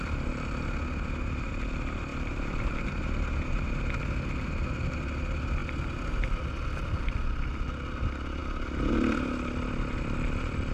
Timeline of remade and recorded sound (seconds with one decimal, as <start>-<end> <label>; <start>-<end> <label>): 0.0-2.1 recorded; 2.1-3.2 remade; 3.2-10.7 recorded